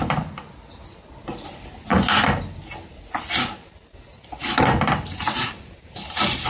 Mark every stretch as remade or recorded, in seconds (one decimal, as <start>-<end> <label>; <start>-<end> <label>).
0.0-6.5 recorded